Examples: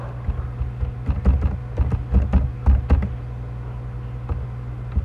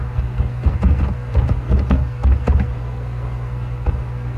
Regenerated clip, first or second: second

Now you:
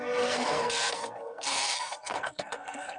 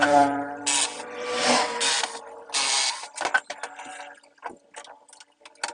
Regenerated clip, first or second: first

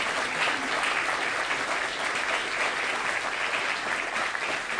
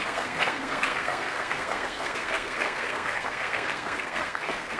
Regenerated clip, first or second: second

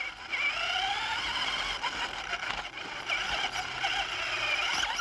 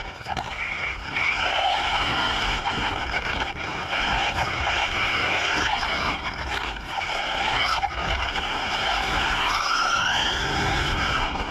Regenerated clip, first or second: second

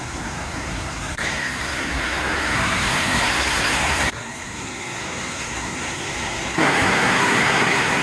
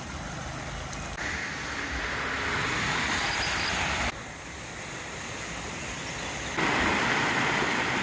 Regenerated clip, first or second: first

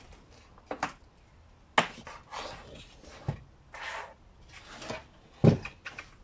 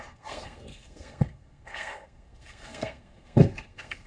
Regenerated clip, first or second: second